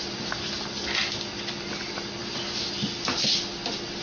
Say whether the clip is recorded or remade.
recorded